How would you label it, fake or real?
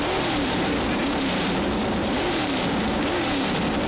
fake